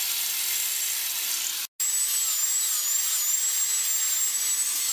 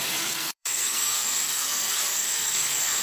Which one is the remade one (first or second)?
second